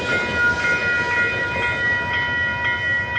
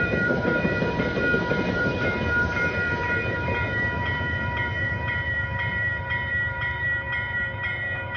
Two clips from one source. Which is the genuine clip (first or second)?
first